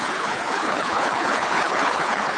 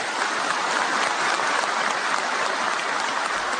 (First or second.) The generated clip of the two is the first